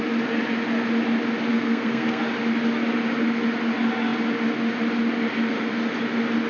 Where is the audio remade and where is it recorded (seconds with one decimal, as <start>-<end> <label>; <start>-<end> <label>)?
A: 0.0-1.5 recorded; 1.5-2.2 remade; 2.2-6.5 recorded